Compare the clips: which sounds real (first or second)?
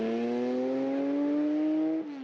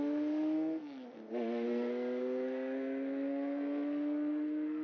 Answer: first